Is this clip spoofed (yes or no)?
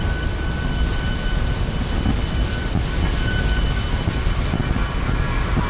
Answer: no